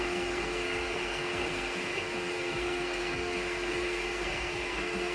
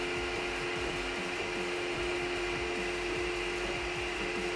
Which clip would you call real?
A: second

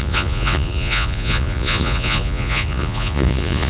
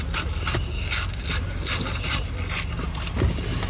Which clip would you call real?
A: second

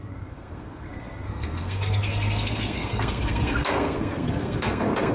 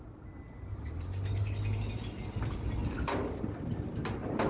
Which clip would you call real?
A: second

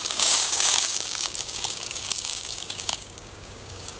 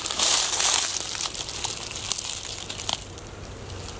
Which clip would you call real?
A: second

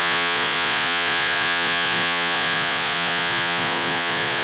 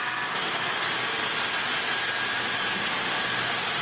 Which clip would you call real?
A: second